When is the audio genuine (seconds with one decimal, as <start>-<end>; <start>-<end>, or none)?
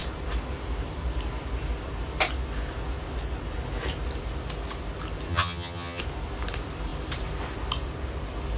0.0-5.3; 6.0-8.6